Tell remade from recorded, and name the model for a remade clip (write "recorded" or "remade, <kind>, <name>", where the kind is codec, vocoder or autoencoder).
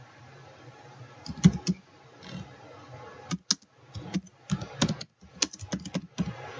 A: recorded